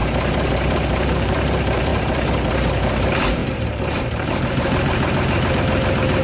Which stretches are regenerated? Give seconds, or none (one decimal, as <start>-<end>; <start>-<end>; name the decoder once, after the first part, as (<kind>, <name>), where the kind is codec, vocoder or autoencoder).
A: 0.0-6.2 (vocoder, BigVGAN v2)

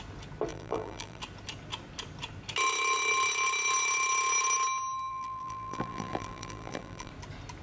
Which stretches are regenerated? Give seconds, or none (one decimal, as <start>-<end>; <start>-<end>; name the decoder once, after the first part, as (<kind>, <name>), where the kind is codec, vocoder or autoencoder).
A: 0.5-1.2 (vocoder, BigVGAN v2); 5.1-7.1

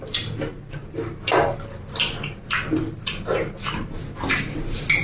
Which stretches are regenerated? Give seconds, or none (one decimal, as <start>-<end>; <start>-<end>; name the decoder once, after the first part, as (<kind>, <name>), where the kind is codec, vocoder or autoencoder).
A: none

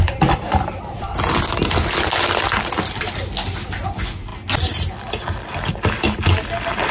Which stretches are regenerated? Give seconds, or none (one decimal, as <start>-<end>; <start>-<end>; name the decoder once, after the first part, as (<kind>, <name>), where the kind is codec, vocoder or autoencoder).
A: none

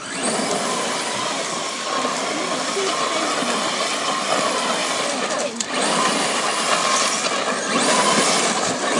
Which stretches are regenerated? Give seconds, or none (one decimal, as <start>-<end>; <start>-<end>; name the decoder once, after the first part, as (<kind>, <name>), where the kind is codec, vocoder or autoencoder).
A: 4.8-6.7 (vocoder, BigVGAN v2)

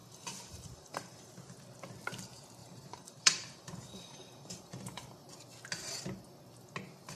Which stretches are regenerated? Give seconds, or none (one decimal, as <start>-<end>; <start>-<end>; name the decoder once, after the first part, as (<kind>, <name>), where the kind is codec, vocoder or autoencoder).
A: 0.0-1.3 (vocoder, BigVGAN v2); 2.6-5.1

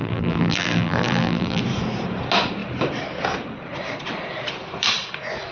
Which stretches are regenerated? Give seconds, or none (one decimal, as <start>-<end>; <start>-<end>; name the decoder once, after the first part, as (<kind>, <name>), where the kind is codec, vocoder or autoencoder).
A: 0.0-1.6 (vocoder, BigVGAN v2)